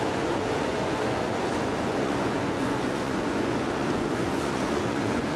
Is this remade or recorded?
remade